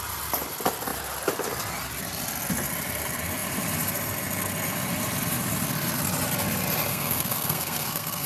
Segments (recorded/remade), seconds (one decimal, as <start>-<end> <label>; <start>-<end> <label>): 0.0-6.9 recorded; 6.9-8.3 remade